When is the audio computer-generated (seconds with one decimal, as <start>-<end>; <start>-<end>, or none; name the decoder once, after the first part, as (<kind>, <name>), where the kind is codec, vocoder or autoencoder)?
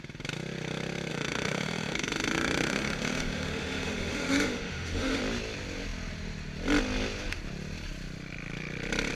1.1-5.2 (autoencoder, DAC-VAE)